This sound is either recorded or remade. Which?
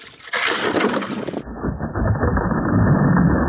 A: recorded